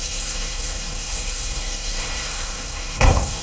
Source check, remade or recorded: remade